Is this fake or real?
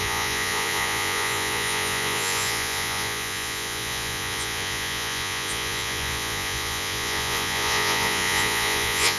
fake